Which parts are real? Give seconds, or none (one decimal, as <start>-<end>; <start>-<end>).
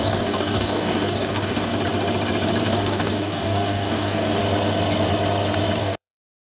1.7-2.6; 4.4-5.8